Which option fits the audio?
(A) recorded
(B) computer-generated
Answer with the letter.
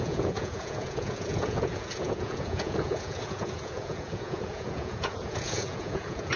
B